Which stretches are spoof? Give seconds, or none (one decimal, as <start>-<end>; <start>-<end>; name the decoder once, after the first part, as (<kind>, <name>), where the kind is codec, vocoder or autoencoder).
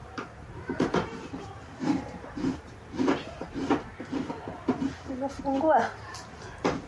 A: 0.0-3.9 (vocoder, BigVGAN v2)